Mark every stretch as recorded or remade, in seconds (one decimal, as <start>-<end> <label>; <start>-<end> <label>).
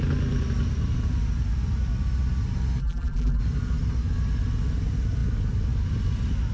0.0-2.8 recorded; 2.8-3.4 remade; 3.4-6.5 recorded